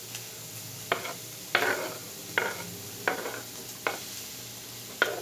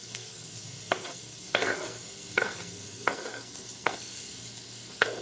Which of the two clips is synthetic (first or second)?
second